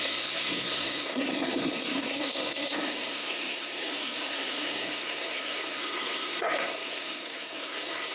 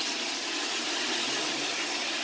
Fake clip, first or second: first